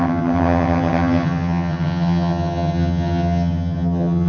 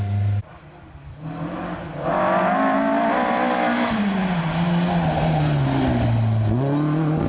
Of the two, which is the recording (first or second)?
second